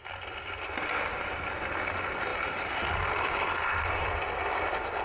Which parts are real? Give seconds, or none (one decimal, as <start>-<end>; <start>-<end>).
0.0-5.0